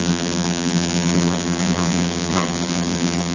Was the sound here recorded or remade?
remade